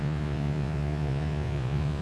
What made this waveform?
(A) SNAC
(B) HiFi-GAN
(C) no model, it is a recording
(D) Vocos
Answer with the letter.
D